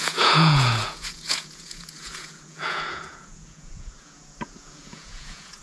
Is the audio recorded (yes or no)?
no